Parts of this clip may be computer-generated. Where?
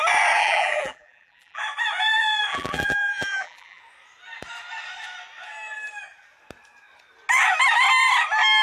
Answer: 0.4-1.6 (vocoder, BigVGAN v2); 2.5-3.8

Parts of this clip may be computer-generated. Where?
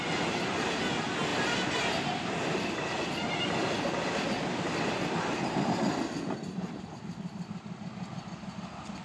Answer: 1.3-2.0 (vocoder, BigVGAN v2)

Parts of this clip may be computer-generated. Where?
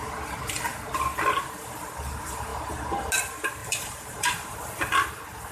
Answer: 2.5-3.1 (vocoder, BigVGAN v2); 3.6-4.6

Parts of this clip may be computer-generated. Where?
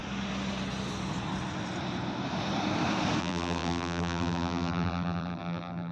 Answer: 3.2-5.9 (vocoder, BigVGAN v2)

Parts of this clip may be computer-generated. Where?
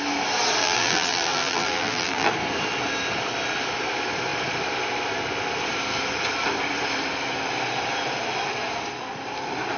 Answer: 0.6-2.3 (vocoder, BigVGAN v2)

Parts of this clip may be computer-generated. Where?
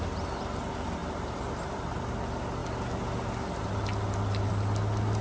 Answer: 1.0-2.2 (vocoder, BigVGAN v2)